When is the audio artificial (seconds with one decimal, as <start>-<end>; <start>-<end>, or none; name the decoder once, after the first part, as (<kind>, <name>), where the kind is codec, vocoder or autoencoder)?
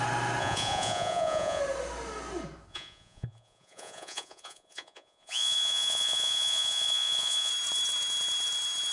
0.4-1.6 (vocoder, Vocos); 2.7-7.5